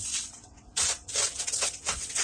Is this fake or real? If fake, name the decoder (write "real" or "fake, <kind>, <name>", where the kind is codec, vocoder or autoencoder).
fake, vocoder, WaveNeXt